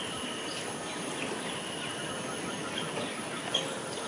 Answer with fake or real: real